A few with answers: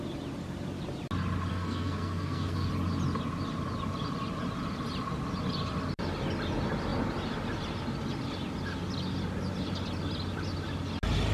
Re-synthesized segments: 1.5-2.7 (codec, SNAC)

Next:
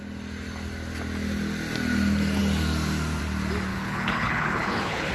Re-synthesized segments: 3.7-5.1 (codec, HILCodec)

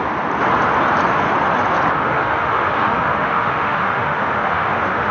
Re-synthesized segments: 2.0-5.1 (autoencoder, DAC-VAE)

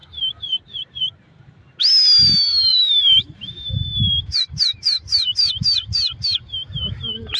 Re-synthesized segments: 2.7-5.5 (vocoder, BigVGAN v2)